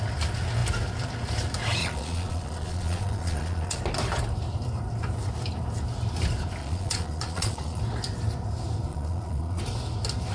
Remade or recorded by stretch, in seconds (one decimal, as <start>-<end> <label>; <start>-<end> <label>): 0.0-1.8 recorded; 1.8-3.8 remade; 3.8-6.6 recorded; 6.6-7.8 remade; 7.8-8.9 recorded; 8.9-9.6 remade; 9.6-10.3 recorded